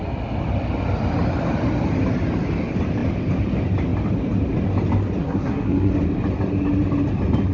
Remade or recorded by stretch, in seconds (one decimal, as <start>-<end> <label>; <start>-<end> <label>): 0.0-5.2 recorded; 5.2-5.9 remade; 5.9-7.5 recorded